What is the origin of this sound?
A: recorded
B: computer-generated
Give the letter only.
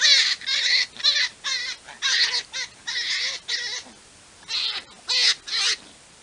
A